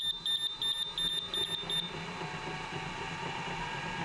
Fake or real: real